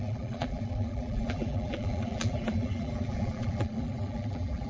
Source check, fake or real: fake